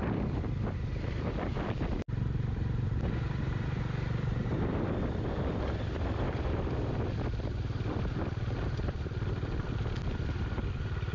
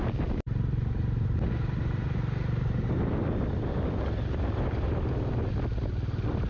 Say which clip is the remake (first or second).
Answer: first